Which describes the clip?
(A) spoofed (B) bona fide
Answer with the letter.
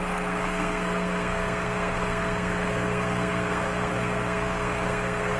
A